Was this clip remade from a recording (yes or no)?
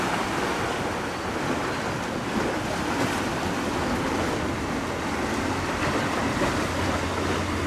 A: no